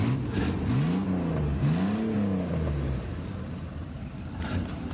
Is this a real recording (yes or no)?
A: yes